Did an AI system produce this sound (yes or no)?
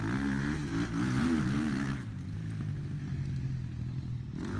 no